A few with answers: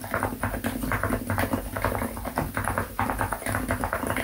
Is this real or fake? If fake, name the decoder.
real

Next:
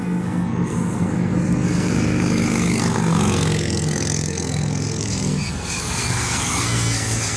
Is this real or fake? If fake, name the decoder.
fake, codec, SNAC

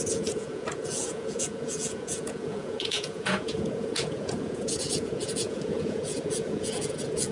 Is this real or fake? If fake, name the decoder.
fake, vocoder, Vocos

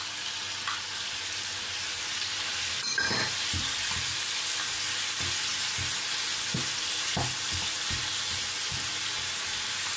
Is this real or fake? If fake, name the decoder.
real